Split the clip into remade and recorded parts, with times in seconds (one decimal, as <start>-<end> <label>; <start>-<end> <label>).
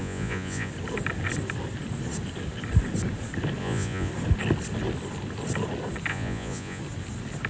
0.0-0.7 remade; 0.7-3.6 recorded; 3.6-4.1 remade; 4.1-6.1 recorded; 6.1-6.8 remade; 6.8-7.5 recorded